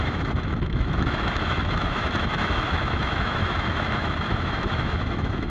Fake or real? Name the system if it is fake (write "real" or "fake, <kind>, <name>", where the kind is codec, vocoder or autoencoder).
fake, autoencoder, DAC-VAE